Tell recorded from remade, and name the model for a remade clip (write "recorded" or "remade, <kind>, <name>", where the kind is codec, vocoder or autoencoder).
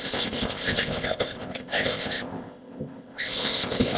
remade, codec, ZipCodec